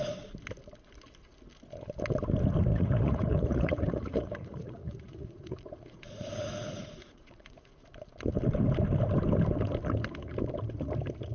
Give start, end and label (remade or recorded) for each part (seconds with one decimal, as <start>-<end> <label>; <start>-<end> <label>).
0.0-2.7 recorded; 2.7-7.9 remade; 7.9-11.3 recorded